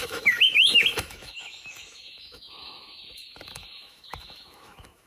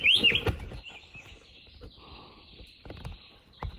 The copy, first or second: first